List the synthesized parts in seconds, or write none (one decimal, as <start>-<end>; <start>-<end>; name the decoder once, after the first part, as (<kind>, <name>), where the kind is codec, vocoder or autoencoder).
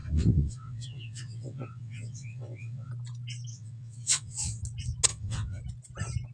0.0-2.9 (vocoder, WaveNeXt); 3.5-4.6; 5.1-5.6